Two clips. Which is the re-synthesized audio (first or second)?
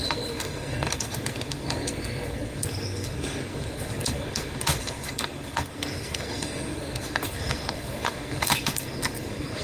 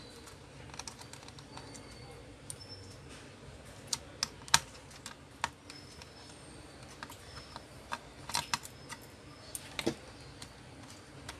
first